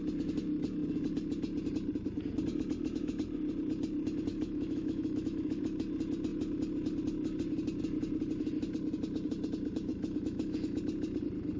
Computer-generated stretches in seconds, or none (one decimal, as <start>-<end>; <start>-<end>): 4.3-5.6; 9.9-10.8